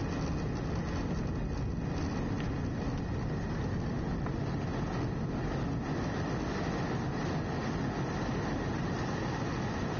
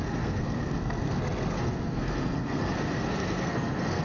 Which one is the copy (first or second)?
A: second